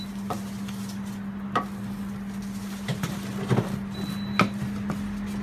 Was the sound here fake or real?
real